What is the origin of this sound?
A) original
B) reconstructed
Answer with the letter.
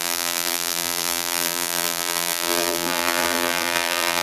B